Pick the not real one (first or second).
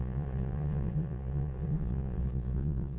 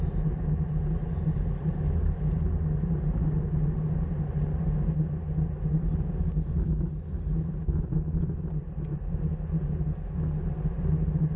first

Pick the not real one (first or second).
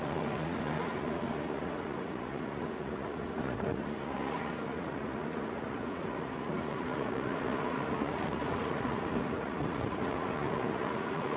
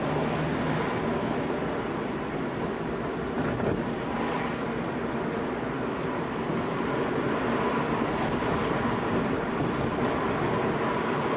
first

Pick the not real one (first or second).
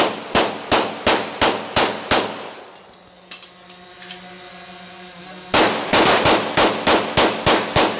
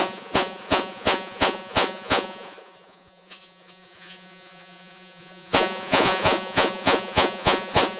second